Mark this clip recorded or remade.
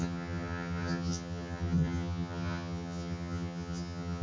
remade